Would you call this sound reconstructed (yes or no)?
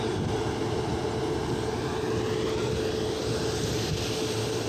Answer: no